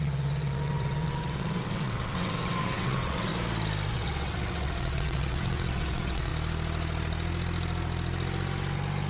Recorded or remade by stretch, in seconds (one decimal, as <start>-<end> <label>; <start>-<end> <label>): 0.0-3.3 remade; 3.3-3.9 recorded; 3.9-6.3 remade; 6.3-9.1 recorded